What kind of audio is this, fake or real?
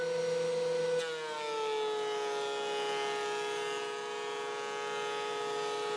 real